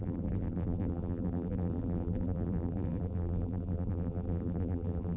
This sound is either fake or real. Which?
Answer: fake